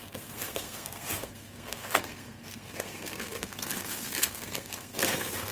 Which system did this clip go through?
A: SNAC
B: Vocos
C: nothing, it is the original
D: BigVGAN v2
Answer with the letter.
A